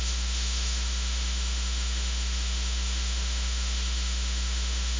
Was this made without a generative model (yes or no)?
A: no